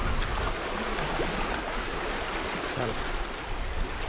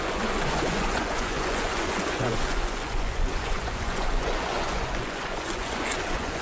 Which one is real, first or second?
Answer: first